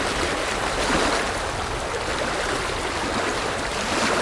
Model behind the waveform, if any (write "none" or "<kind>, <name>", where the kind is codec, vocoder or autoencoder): none